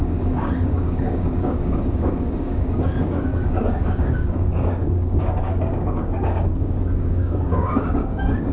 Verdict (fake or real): fake